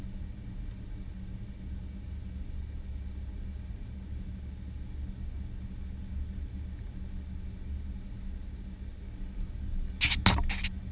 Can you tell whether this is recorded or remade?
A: recorded